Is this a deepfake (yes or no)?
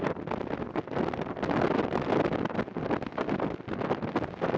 no